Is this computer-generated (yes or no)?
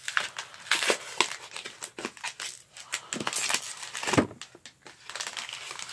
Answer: no